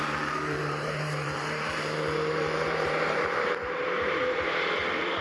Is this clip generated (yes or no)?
yes